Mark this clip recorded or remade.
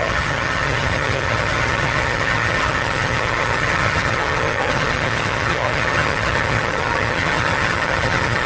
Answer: remade